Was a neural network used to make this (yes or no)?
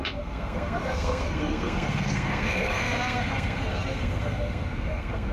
yes